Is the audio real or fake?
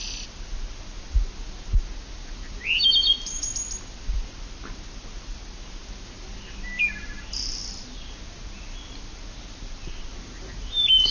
real